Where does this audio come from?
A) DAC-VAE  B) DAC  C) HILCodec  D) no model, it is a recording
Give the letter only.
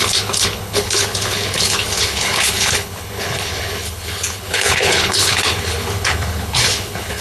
C